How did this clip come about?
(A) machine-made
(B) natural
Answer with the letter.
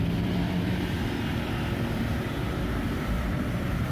A